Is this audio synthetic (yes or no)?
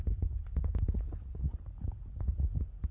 no